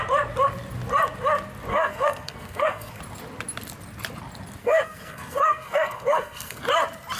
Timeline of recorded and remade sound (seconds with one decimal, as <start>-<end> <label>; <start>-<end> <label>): 0.0-1.7 recorded; 1.7-3.0 remade; 3.0-4.6 recorded; 4.6-6.6 remade; 6.6-7.2 recorded